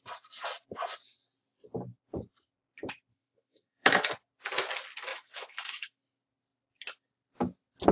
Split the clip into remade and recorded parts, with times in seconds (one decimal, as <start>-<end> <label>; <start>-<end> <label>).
0.0-3.1 recorded; 3.1-4.1 remade; 4.1-5.1 recorded; 5.1-6.0 remade; 6.0-7.9 recorded